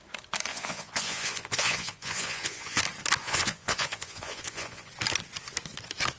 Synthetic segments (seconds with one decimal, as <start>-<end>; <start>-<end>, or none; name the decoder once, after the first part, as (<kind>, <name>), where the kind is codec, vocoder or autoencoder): 0.5-2.8 (vocoder, Vocos); 3.2-4.9